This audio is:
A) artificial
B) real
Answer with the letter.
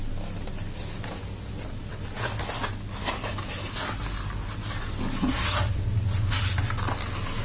B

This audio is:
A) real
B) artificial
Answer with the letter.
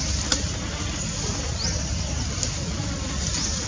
A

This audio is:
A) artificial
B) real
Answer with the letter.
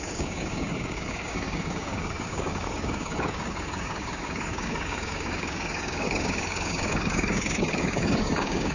A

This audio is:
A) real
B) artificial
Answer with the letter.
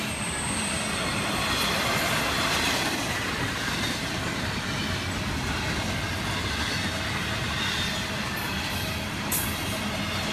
A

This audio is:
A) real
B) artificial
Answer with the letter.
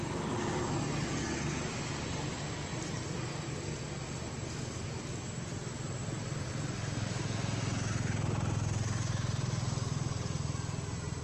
A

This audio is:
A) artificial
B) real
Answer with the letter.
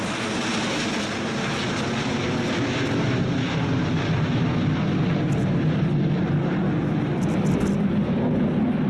B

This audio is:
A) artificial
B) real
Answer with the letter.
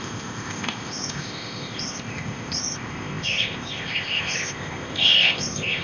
A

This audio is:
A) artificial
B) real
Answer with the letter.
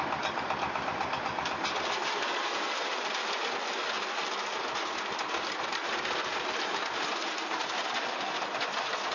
B